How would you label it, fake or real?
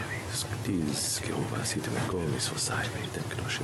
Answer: real